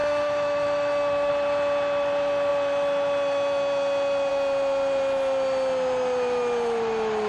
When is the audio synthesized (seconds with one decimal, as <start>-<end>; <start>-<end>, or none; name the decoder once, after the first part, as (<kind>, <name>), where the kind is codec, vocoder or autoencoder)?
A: 0.0-1.3 (autoencoder, DAC-VAE)

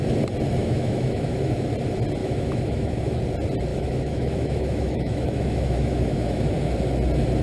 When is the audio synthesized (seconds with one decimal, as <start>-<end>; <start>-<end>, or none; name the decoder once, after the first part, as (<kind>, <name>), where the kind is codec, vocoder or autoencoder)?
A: 0.6-1.5 (autoencoder, DAC-VAE); 2.2-3.2; 3.7-6.5

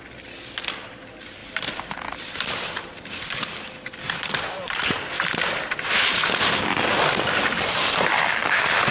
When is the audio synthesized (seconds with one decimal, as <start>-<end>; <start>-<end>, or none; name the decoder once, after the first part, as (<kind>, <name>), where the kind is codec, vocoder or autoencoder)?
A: none